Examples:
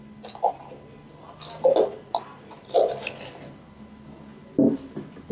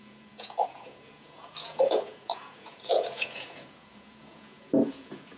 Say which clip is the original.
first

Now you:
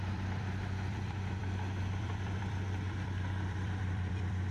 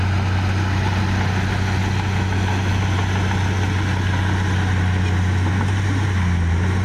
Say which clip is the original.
second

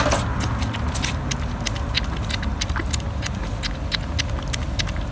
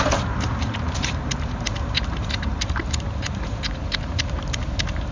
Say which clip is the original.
first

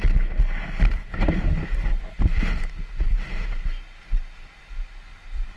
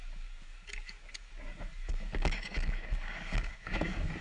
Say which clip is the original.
first